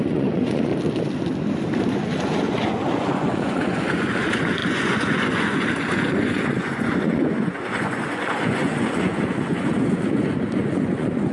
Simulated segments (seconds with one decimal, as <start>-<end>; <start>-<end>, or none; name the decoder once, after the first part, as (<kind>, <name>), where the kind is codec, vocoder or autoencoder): 0.0-0.7 (vocoder, Vocos); 1.9-11.3